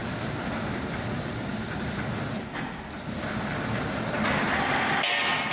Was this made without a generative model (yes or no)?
yes